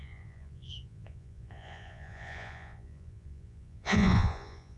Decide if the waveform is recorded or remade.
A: remade